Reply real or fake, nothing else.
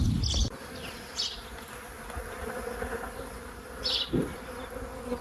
real